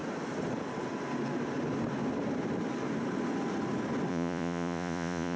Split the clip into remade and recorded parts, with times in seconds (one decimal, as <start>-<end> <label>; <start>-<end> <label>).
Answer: 0.0-4.1 recorded; 4.1-5.4 remade